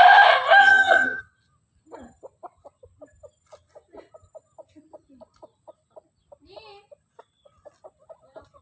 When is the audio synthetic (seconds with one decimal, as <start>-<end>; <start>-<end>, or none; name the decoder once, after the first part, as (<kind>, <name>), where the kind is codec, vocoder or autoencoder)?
0.6-1.2 (vocoder, HiFi-GAN)